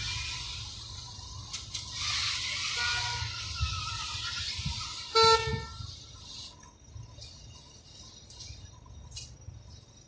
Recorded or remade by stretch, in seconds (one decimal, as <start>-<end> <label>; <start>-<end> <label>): 0.0-10.1 recorded